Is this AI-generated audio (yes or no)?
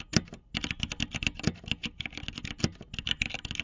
no